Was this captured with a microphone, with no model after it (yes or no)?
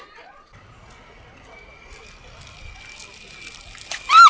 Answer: yes